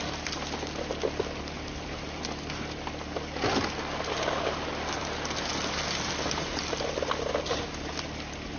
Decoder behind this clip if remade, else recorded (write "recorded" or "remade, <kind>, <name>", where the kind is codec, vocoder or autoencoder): recorded